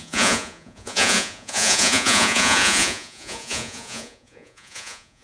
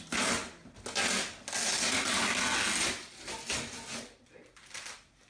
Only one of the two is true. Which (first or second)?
second